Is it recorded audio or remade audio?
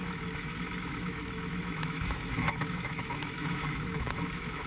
remade